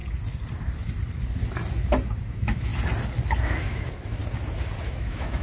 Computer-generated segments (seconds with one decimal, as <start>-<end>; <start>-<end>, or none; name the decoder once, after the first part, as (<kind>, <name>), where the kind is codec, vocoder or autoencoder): 2.3-2.7 (autoencoder, DAC-VAE); 3.4-4.2; 4.8-5.4